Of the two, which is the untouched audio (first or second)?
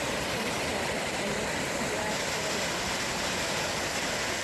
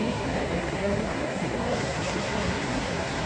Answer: first